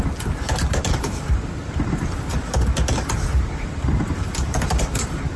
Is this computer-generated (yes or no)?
no